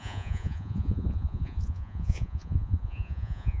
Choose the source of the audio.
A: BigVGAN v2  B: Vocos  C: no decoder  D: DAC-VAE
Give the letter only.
B